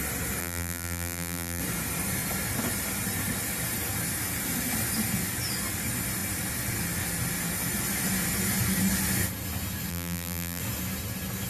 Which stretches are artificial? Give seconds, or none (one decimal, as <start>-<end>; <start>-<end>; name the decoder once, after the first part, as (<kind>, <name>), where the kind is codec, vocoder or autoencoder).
0.4-1.6 (vocoder, BigVGAN v2); 9.9-10.6